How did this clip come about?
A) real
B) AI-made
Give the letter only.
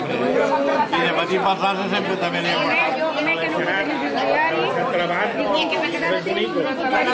A